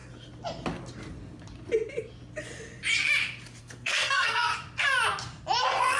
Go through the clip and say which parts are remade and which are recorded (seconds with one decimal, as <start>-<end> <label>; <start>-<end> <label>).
0.0-3.6 recorded; 3.6-4.5 remade; 4.5-5.6 recorded; 5.6-6.0 remade